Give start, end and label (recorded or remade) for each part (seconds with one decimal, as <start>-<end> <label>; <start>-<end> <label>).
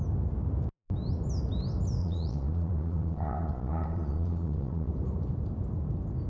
0.0-2.0 recorded; 2.0-4.9 remade; 4.9-6.3 recorded